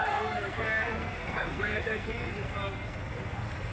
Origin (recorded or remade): remade